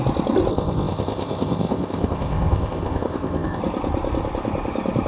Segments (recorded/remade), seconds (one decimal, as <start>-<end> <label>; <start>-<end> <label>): 0.0-0.5 recorded; 0.5-3.6 remade; 3.6-5.1 recorded